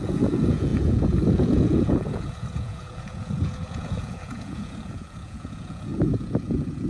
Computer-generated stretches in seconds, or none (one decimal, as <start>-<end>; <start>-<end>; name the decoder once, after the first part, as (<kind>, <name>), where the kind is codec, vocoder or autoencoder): 0.0-6.9 (vocoder, Vocos)